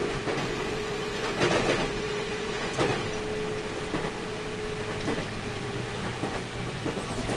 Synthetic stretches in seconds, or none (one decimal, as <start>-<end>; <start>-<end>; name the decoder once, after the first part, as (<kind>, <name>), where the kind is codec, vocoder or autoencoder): 0.0-2.9 (vocoder, Vocos); 5.6-7.4